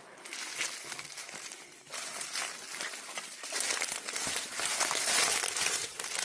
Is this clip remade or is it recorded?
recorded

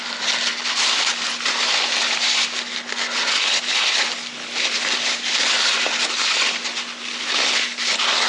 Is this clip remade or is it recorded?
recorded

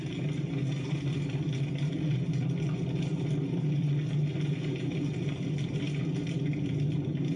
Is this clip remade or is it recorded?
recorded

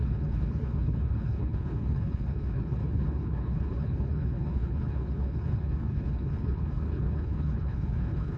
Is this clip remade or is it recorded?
remade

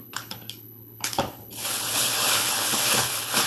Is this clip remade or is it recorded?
remade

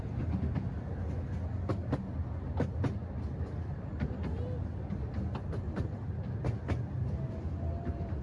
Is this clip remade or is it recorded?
recorded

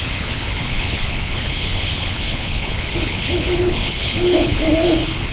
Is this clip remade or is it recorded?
remade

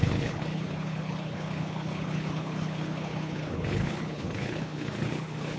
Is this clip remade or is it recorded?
remade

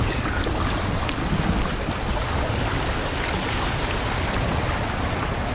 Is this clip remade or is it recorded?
recorded